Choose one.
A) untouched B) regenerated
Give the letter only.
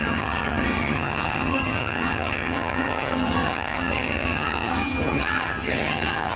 B